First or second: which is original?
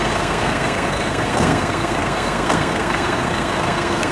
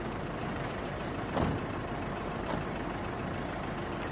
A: second